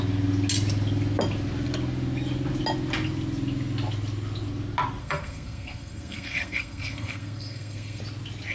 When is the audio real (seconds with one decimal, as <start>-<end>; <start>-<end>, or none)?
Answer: 0.0-5.0; 8.0-8.5